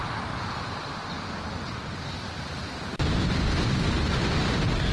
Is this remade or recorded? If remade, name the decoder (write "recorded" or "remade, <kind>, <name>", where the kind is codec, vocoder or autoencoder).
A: recorded